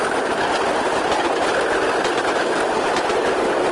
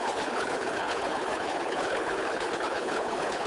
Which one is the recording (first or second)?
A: first